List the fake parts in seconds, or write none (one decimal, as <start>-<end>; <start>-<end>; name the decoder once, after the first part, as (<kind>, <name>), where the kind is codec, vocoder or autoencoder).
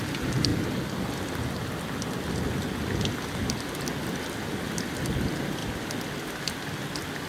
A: none